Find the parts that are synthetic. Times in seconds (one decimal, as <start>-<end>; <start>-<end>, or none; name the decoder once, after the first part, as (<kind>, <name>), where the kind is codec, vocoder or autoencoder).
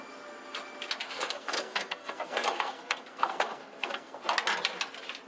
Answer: 1.0-4.2 (codec, SNAC)